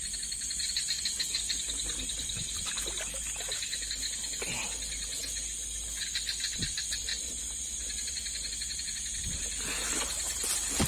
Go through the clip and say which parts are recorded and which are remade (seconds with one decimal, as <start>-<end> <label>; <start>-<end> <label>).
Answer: 0.0-10.9 recorded